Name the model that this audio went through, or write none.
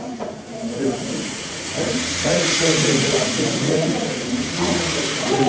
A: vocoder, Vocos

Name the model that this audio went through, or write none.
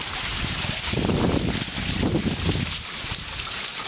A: vocoder, BigVGAN v2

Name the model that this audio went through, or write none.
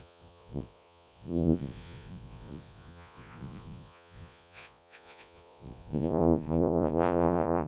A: vocoder, Vocos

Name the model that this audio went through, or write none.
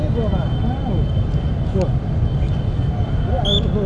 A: none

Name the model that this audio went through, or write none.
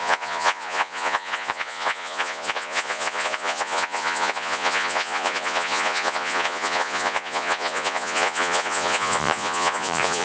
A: vocoder, Vocos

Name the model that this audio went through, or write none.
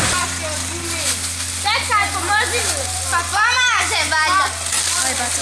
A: none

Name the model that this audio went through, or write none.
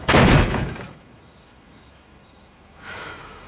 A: autoencoder, DAC-VAE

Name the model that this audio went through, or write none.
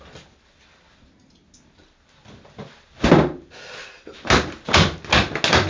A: none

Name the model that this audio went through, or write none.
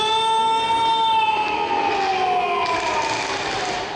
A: none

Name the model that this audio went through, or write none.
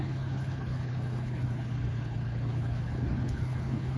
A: codec, HILCodec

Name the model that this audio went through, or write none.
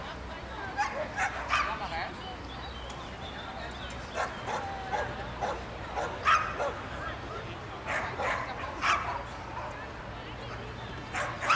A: none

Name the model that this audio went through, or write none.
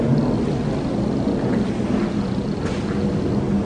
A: none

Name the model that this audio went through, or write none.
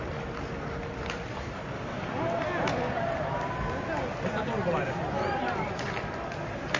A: none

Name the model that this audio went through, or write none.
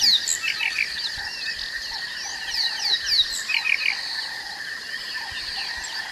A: none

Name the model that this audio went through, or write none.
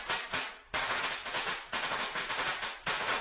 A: vocoder, Vocos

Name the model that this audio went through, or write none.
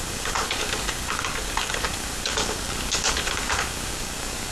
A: codec, DAC